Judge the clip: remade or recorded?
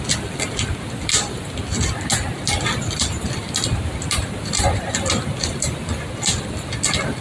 recorded